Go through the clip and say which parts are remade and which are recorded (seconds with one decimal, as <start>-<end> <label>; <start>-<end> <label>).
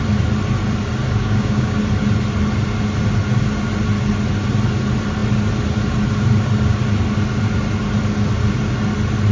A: 0.0-1.2 recorded; 1.2-1.8 remade; 1.8-9.3 recorded